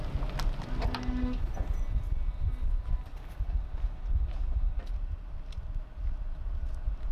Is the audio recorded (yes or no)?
yes